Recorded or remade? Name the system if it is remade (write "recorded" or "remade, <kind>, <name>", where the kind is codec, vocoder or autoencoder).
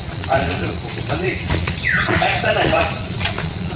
remade, vocoder, Vocos